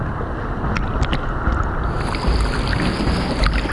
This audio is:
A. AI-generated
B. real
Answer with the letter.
B